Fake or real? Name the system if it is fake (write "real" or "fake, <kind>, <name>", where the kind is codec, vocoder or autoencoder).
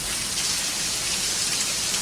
real